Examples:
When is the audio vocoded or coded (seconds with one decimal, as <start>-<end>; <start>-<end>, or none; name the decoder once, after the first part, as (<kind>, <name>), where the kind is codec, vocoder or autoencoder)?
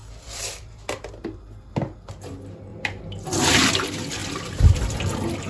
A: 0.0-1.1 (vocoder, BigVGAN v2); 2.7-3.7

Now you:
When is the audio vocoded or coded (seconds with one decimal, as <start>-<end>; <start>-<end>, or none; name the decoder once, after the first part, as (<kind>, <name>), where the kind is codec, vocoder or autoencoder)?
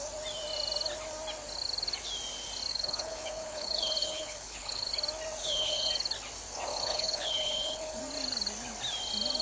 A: 2.7-4.9 (codec, HILCodec); 5.4-5.9; 6.7-8.0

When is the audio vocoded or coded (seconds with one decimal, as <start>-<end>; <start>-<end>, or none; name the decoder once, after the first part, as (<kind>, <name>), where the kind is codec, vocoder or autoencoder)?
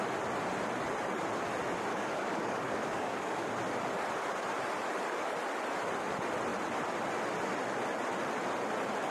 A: 1.9-3.5 (codec, DAC)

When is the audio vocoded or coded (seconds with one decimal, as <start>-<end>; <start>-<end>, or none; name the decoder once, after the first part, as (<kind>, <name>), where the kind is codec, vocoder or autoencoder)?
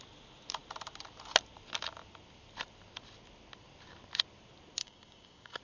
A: 4.8-5.6 (codec, DAC)